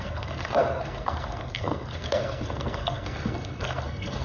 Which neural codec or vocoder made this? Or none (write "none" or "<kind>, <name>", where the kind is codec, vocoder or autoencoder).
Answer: codec, SNAC